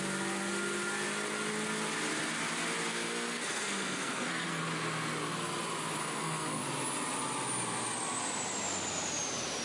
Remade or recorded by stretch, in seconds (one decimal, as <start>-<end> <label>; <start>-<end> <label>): 0.0-2.9 recorded; 2.9-4.6 remade; 4.6-6.0 recorded; 6.0-6.6 remade; 6.6-9.6 recorded